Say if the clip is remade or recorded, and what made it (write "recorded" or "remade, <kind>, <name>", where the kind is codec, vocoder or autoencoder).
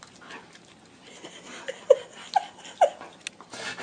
recorded